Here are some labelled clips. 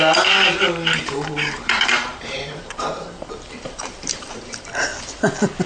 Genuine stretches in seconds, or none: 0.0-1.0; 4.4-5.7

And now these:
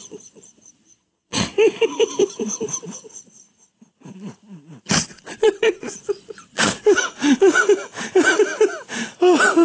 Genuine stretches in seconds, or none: 2.1-5.1; 7.6-9.6

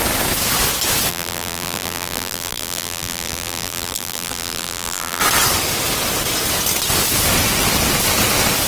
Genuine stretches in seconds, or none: 0.0-1.1; 5.2-8.7

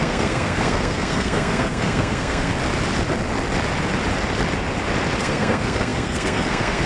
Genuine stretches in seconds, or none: 2.5-5.2

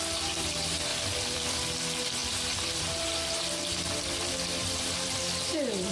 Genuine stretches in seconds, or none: 0.0-0.9; 1.6-2.2; 2.8-4.6; 5.2-5.9